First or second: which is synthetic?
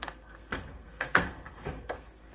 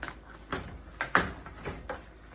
first